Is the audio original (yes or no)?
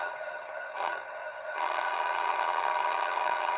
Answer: no